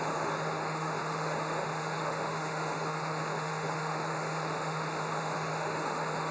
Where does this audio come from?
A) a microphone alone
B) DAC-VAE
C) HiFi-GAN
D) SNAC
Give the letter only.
B